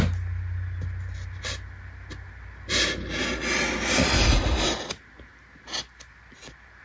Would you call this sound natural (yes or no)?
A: yes